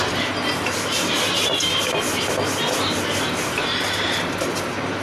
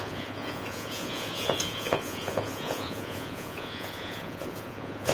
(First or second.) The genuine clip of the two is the first